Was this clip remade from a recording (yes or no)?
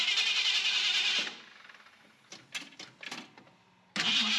no